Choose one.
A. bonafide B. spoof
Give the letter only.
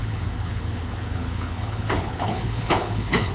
B